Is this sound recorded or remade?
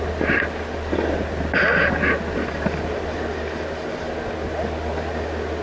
recorded